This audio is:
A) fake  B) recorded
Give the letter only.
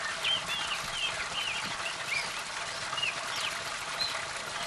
B